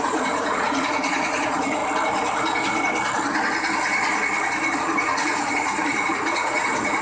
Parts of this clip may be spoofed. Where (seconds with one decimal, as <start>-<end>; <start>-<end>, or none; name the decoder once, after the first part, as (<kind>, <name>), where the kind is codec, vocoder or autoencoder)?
0.0-1.8 (vocoder, Vocos); 4.8-7.0